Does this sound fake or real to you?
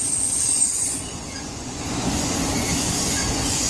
fake